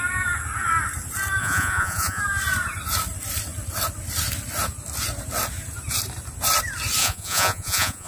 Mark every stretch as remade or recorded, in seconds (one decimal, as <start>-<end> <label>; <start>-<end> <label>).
0.0-1.4 recorded; 1.4-2.2 remade; 2.2-7.0 recorded; 7.0-8.1 remade